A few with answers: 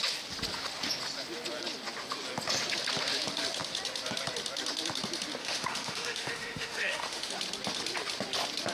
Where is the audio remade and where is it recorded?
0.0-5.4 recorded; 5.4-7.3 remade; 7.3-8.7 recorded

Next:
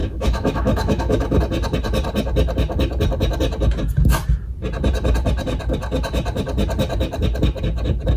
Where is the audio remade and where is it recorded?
0.0-1.4 remade; 1.4-8.2 recorded

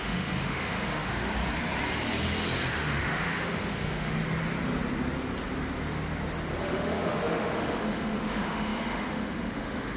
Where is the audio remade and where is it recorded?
0.0-1.3 remade; 1.3-2.7 recorded; 2.7-4.2 remade; 4.2-6.6 recorded; 6.6-10.0 remade

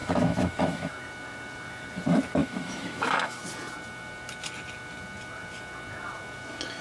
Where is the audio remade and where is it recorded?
0.0-0.9 remade; 0.9-2.4 recorded; 2.4-3.4 remade; 3.4-6.8 recorded

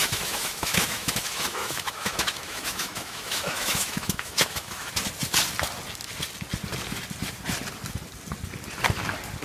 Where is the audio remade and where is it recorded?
0.0-4.9 remade; 4.9-9.4 recorded

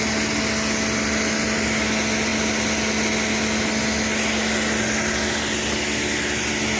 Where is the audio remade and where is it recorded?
0.0-6.8 recorded

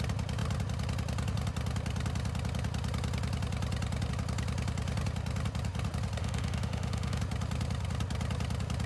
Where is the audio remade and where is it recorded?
0.0-6.2 recorded; 6.2-7.2 remade; 7.2-8.9 recorded